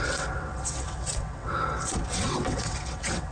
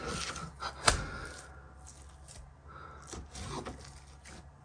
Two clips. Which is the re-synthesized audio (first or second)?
first